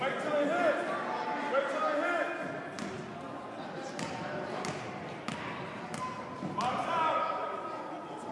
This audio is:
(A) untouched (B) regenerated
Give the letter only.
A